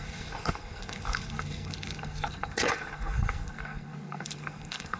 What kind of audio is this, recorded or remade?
remade